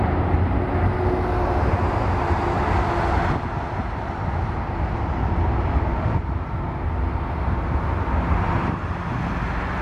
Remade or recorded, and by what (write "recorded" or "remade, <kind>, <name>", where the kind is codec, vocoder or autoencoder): recorded